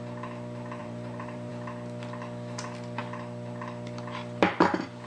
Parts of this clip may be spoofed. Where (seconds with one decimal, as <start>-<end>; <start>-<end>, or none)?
0.8-1.5